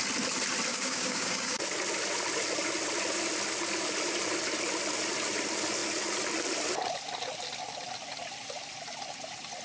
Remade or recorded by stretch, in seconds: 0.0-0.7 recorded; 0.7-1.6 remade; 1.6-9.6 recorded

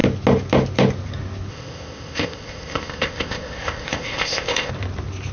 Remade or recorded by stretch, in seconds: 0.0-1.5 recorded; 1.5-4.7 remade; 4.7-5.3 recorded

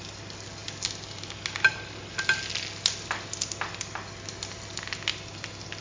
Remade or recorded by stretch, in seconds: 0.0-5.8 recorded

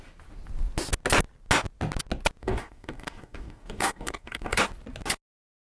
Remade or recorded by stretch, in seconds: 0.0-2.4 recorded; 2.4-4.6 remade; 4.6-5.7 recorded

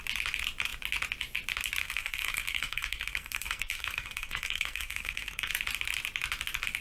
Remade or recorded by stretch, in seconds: 0.0-1.8 recorded; 1.8-5.5 remade; 5.5-6.8 recorded

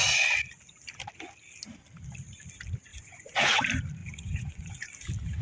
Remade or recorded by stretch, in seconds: 0.0-2.9 recorded; 2.9-3.6 remade; 3.6-4.0 recorded; 4.0-4.9 remade; 4.9-5.4 recorded

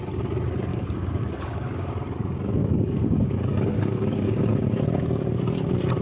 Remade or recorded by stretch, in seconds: 0.0-0.7 recorded; 0.7-1.9 remade; 1.9-2.6 recorded; 2.6-4.5 remade; 4.5-6.0 recorded

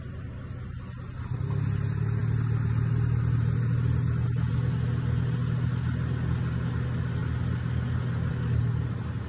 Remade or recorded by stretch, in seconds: 0.0-9.3 recorded